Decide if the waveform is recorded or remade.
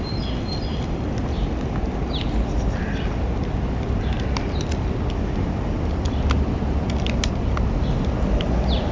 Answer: recorded